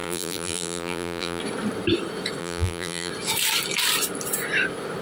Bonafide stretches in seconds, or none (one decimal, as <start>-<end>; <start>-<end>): 1.4-2.4; 3.1-5.0